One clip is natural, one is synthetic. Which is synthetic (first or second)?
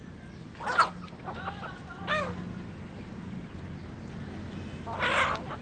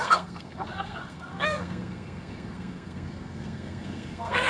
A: second